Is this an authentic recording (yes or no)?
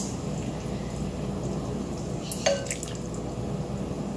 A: yes